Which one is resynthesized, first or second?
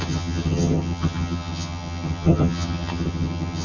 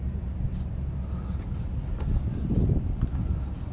first